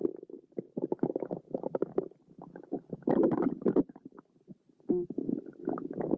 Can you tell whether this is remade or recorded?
recorded